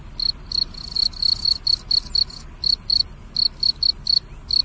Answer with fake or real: real